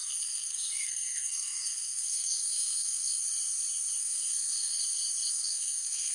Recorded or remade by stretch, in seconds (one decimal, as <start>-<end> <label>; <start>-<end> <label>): 0.0-3.2 remade; 3.2-4.0 recorded; 4.0-4.8 remade; 4.8-5.3 recorded; 5.3-6.1 remade